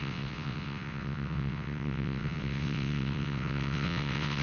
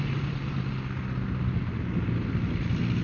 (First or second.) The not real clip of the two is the first